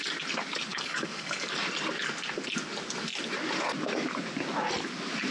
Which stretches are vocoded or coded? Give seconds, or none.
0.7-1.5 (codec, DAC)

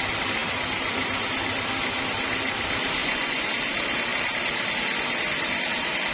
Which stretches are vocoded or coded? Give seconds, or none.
3.0-3.5 (vocoder, Vocos)

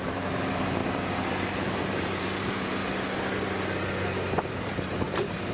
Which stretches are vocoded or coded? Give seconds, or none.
0.0-0.8 (vocoder, BigVGAN v2); 1.5-2.8; 4.4-5.5

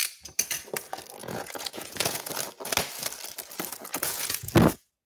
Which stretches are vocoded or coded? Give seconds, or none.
1.2-2.3 (vocoder, Vocos); 3.9-4.5

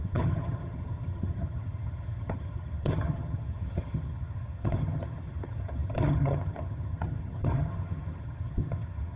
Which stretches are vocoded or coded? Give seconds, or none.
0.0-9.2 (vocoder, HiFi-GAN)

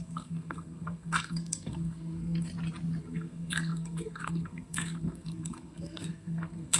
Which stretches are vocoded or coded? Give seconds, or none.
0.0-2.5 (codec, SNAC); 3.0-6.8